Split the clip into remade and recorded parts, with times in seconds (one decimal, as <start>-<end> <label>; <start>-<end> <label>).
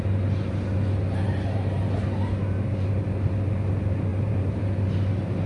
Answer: 0.0-4.1 recorded; 4.1-4.8 remade; 4.8-5.5 recorded